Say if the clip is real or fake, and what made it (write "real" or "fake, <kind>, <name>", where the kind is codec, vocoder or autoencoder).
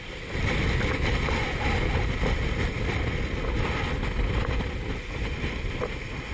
real